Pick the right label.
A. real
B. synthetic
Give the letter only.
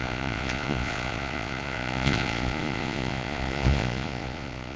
B